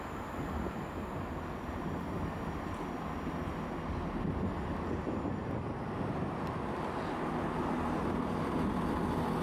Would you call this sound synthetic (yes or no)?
no